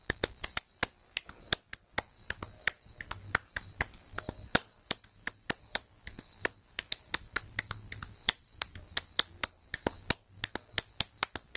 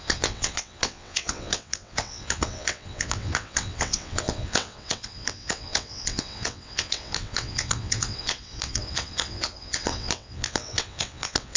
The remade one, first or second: second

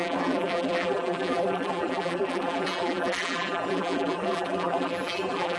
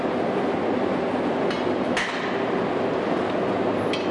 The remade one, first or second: first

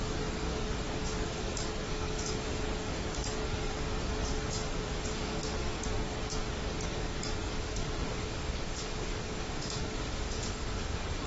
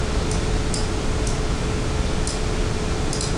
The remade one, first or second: first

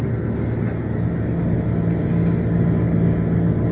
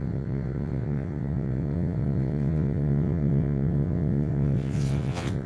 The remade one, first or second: second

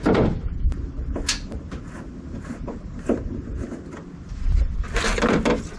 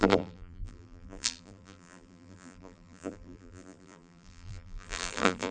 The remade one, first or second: second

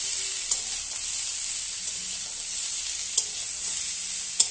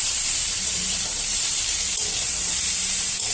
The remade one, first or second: second